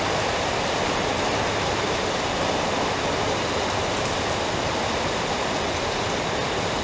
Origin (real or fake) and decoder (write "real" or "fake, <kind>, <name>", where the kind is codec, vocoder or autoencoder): real